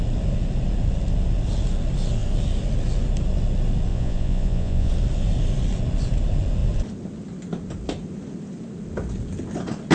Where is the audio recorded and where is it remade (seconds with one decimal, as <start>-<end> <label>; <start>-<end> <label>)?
0.0-3.9 recorded; 3.9-4.9 remade; 4.9-9.9 recorded